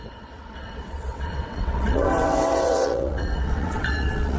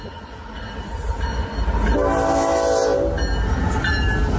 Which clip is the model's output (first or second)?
first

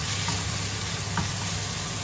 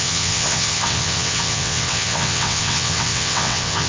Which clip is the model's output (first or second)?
second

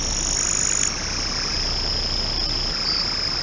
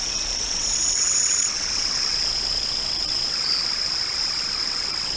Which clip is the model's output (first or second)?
second